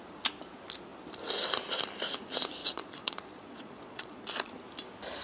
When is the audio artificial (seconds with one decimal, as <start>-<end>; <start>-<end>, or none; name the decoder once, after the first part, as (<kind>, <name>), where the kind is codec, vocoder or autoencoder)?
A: 2.6-4.5 (vocoder, Vocos)